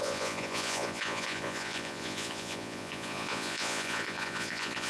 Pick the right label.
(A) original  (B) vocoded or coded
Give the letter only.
B